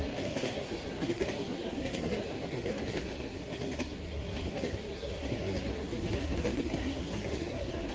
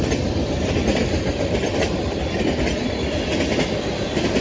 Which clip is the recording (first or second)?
second